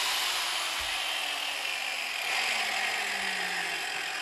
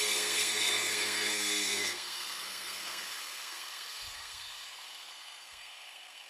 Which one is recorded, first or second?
first